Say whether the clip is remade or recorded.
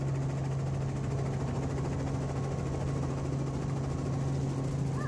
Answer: recorded